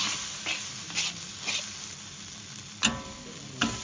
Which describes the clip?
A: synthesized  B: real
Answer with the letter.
B